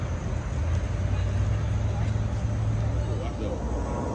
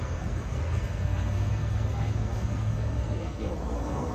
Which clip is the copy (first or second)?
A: second